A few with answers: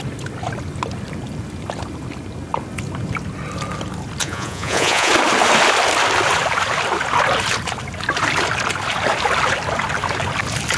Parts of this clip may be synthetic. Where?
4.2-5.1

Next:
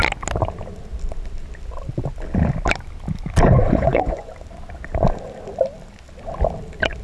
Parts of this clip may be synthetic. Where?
3.6-4.3

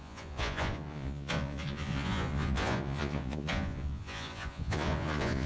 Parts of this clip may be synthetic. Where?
0.0-5.5

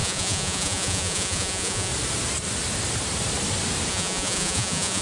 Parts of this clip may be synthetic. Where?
0.0-1.9; 3.9-5.0

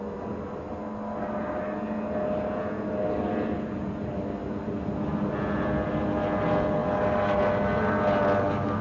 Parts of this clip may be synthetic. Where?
none

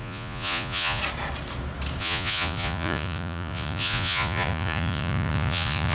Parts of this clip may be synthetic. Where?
0.0-1.0; 2.0-5.9

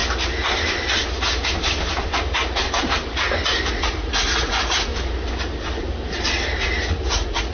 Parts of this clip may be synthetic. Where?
3.7-4.9; 6.9-7.5

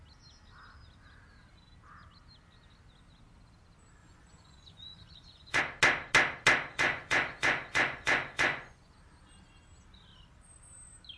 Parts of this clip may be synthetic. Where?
4.0-5.6; 6.7-8.9